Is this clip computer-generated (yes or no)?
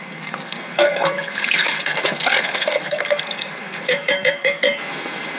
yes